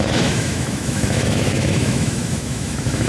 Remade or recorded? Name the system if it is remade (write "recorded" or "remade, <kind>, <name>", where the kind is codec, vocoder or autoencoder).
remade, autoencoder, DAC-VAE